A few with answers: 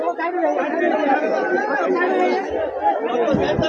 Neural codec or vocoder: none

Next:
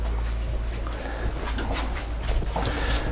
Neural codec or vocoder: none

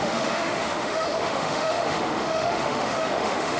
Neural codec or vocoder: autoencoder, DAC-VAE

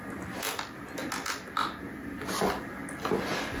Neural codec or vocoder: none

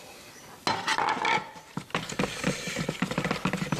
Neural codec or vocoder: none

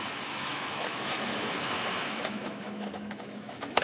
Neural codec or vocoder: autoencoder, DAC-VAE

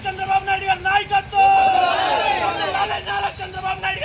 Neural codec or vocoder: none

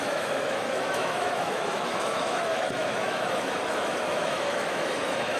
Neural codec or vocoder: autoencoder, DAC-VAE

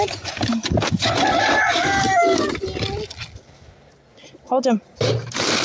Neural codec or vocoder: none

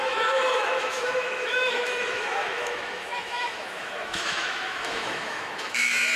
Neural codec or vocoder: autoencoder, DAC-VAE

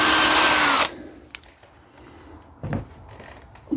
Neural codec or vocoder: none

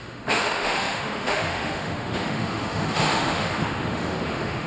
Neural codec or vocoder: autoencoder, DAC-VAE